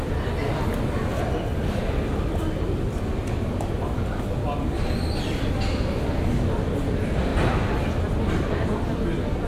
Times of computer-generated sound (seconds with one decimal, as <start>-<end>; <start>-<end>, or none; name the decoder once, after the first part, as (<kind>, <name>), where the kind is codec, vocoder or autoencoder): none